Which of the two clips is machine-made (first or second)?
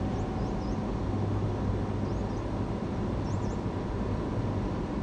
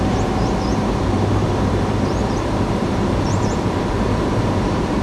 second